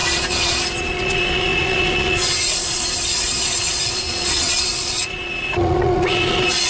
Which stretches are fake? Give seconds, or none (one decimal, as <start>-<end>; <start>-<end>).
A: 0.0-6.7